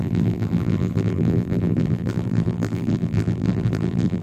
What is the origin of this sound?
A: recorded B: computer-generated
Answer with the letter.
B